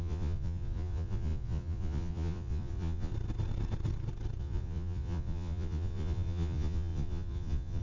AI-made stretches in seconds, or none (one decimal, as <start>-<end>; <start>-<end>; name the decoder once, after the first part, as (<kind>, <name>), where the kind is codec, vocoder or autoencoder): 0.0-3.1 (vocoder, Vocos); 4.4-7.8